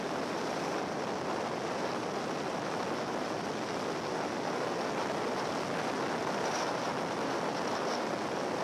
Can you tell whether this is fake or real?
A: real